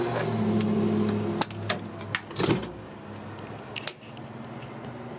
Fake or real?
real